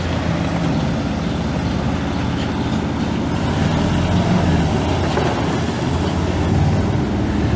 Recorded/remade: recorded